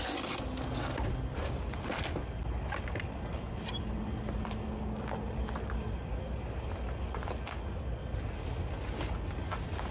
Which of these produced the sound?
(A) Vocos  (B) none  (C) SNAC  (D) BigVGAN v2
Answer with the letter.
B